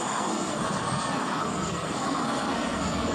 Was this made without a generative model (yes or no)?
no